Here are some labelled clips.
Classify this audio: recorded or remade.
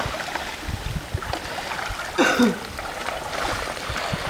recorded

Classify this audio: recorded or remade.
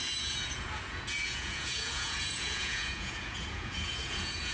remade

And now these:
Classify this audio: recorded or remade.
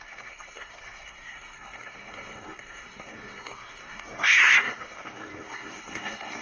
remade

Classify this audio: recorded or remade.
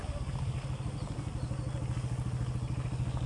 recorded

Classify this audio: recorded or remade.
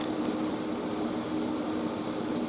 recorded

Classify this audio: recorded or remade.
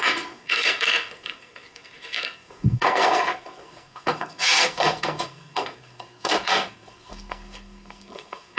remade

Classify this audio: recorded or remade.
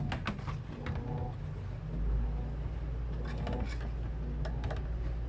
recorded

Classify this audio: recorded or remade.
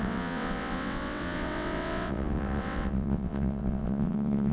remade